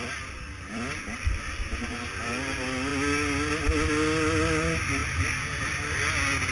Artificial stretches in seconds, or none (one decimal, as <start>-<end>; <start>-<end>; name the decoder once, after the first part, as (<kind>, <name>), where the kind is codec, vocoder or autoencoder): 1.6-2.3 (vocoder, BigVGAN v2)